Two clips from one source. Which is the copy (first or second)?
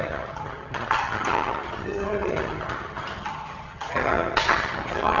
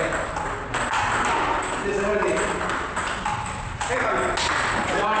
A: first